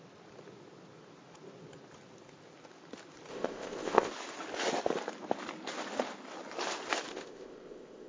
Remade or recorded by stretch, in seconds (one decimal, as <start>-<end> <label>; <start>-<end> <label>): 0.0-3.3 recorded; 3.3-4.1 remade; 4.1-7.1 recorded; 7.1-8.1 remade